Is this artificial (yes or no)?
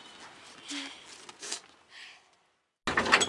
no